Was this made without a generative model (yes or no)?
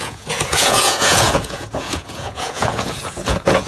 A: no